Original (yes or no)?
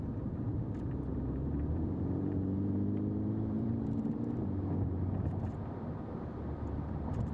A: no